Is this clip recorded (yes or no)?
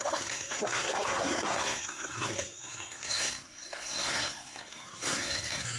no